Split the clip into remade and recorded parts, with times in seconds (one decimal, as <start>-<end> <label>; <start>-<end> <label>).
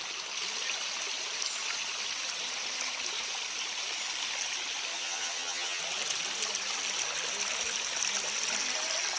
0.0-4.9 recorded; 4.9-5.8 remade; 5.8-9.2 recorded